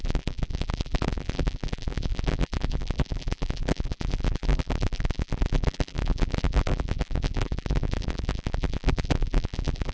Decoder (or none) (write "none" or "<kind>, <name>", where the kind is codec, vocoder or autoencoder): vocoder, BigVGAN v2